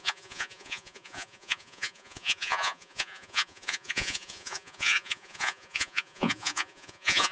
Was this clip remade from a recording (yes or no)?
yes